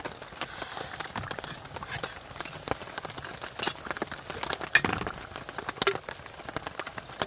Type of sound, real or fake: real